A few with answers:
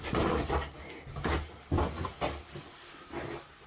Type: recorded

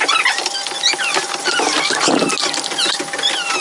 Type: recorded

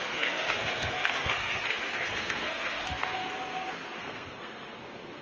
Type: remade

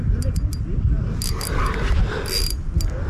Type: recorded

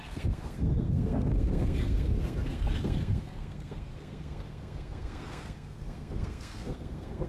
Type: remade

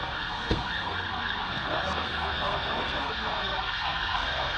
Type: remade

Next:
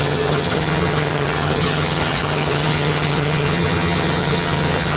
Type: remade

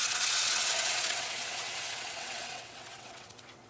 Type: remade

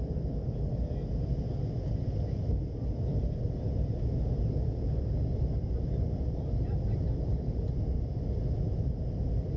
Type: recorded